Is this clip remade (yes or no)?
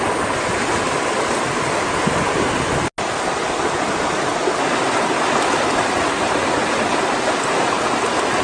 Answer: no